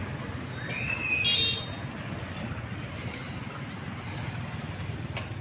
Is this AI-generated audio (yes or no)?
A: no